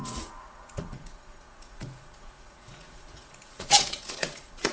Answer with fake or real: fake